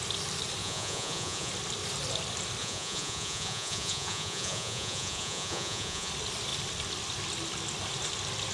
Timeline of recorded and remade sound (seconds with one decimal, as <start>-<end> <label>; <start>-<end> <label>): 0.0-0.6 recorded; 0.6-1.5 remade; 1.5-2.6 recorded; 2.6-6.1 remade; 6.1-8.5 recorded